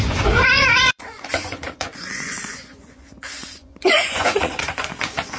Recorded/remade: remade